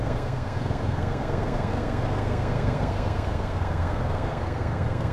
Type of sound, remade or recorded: remade